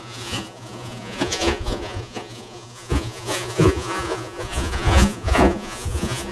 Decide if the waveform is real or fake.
fake